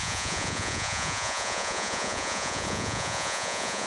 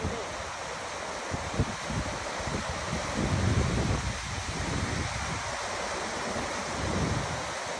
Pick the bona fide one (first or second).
second